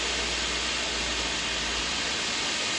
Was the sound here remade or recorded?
recorded